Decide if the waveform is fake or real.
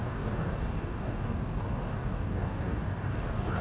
fake